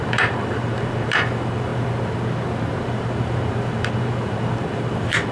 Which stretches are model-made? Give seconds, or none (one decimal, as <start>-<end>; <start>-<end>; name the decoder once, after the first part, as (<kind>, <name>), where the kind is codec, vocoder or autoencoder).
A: 0.0-1.7 (vocoder, BigVGAN v2); 2.8-5.3